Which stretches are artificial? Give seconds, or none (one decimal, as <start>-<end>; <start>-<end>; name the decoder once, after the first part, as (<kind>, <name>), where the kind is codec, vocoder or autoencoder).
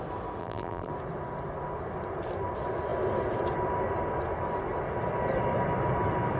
0.4-0.9 (vocoder, BigVGAN v2)